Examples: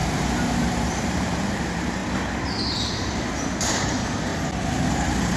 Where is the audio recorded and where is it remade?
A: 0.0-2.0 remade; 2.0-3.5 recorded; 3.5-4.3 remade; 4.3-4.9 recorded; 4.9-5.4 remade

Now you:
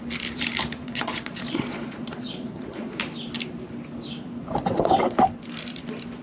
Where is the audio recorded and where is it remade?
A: 0.0-0.8 recorded; 0.8-3.0 remade; 3.0-6.2 recorded

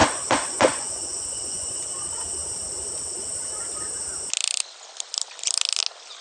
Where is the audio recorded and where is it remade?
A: 0.0-1.8 remade; 1.8-6.2 recorded

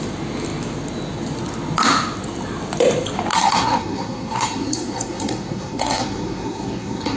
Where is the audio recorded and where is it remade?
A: 0.0-3.3 recorded; 3.3-7.2 remade